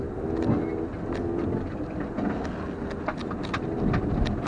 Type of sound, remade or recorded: recorded